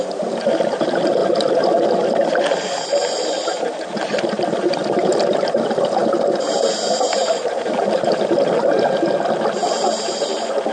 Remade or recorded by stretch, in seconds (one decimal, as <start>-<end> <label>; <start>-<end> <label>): 0.0-10.7 recorded